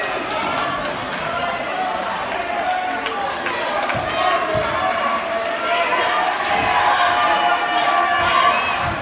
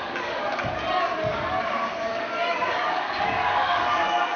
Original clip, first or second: first